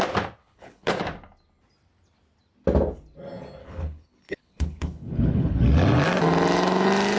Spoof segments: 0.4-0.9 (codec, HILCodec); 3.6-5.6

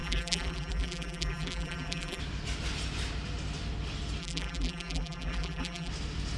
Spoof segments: 0.0-2.2 (vocoder, BigVGAN v2); 4.2-5.9

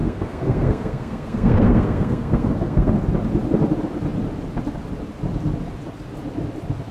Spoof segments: 0.0-2.9 (codec, SNAC)

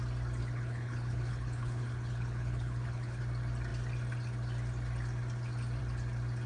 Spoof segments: 0.4-3.2 (codec, HILCodec)